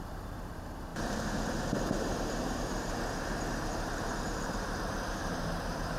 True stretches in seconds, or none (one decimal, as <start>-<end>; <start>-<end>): none